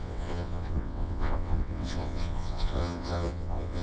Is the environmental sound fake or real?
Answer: fake